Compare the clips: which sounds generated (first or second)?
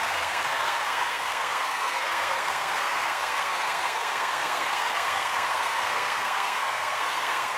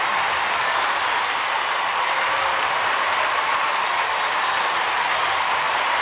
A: first